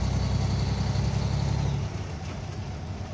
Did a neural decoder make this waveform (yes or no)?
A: no